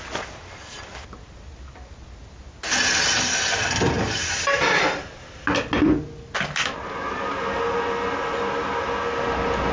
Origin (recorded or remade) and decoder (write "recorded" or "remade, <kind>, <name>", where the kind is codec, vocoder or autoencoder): recorded